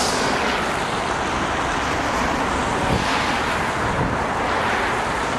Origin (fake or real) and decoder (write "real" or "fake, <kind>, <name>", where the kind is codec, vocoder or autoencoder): real